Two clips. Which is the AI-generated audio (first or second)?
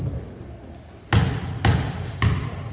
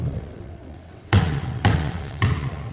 second